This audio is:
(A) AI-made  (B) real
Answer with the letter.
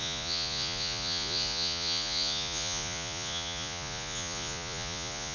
A